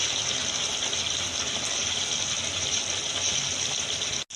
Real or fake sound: real